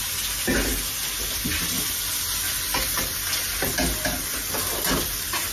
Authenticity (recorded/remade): recorded